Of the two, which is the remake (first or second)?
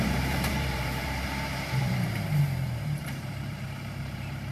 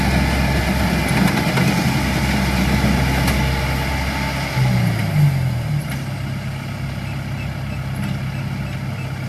first